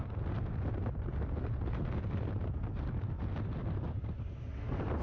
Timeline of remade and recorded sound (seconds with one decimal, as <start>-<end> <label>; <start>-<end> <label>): 0.0-5.0 recorded